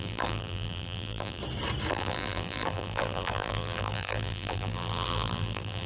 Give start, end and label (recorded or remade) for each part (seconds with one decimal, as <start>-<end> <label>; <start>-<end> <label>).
0.0-1.4 remade; 1.4-1.9 recorded; 1.9-5.9 remade